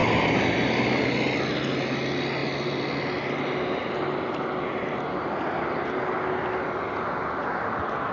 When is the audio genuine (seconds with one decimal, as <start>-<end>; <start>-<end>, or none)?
0.0-8.1